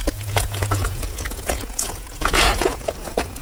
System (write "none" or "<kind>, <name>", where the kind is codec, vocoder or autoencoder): vocoder, Vocos